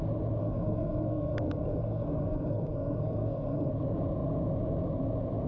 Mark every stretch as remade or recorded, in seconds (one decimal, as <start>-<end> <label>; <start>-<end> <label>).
0.0-0.4 recorded; 0.4-3.7 remade; 3.7-5.5 recorded